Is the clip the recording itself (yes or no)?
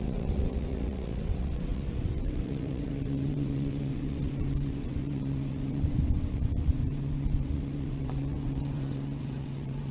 no